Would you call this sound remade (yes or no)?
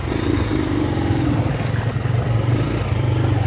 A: yes